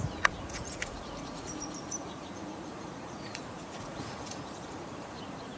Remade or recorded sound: remade